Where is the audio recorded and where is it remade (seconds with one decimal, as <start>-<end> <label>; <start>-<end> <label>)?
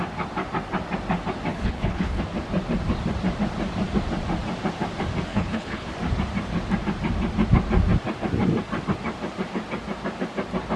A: 0.0-1.5 recorded; 1.5-2.2 remade; 2.2-5.3 recorded; 5.3-5.9 remade; 5.9-10.8 recorded